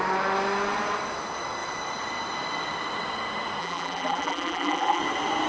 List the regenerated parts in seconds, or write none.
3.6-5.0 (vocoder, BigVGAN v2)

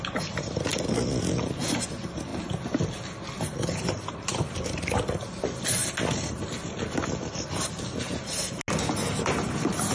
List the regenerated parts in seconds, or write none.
0.7-1.6 (vocoder, BigVGAN v2)

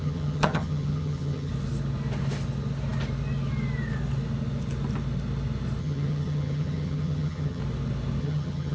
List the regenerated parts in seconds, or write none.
0.0-1.5 (vocoder, HiFi-GAN); 5.8-7.6; 8.2-8.7

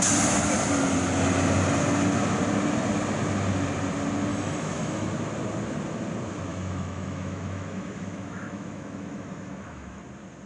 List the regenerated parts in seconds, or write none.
4.3-5.1 (autoencoder, DAC-VAE); 6.5-10.0

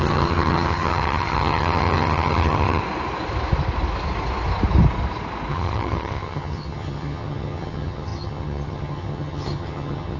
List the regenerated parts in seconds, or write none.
0.0-2.8 (vocoder, HiFi-GAN); 5.5-10.2

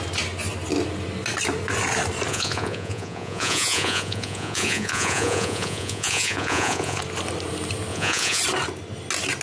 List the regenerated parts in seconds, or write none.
2.3-7.0 (vocoder, Vocos); 7.9-8.4

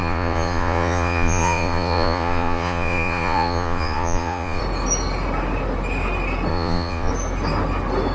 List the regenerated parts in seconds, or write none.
0.0-4.6 (vocoder, Vocos); 6.5-7.1

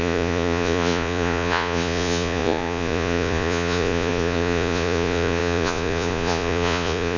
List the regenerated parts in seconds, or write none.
0.0-7.2 (vocoder, Vocos)